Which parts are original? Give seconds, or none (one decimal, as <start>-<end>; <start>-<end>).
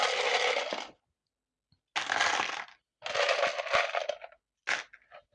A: 0.0-5.3